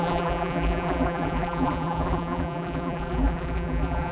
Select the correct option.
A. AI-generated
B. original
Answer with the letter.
A